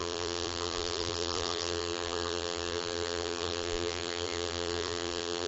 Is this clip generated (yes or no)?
yes